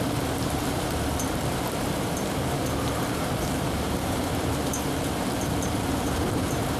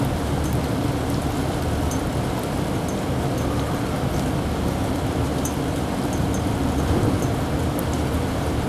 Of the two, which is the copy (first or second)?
first